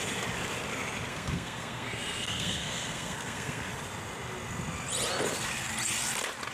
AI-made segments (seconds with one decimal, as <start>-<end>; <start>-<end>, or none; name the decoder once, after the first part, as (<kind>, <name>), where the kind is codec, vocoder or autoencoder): 1.1-3.7 (codec, SNAC)